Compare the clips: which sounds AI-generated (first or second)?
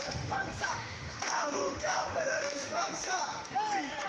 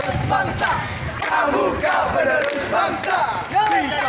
first